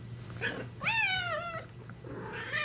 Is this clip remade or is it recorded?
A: recorded